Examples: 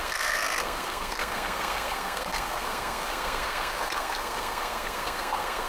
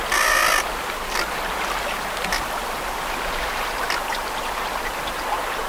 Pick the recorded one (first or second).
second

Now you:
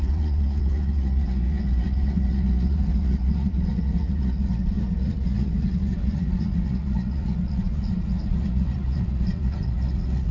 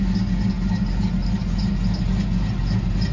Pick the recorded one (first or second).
second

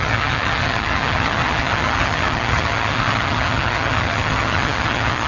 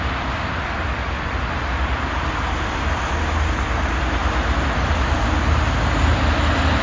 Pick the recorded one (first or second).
second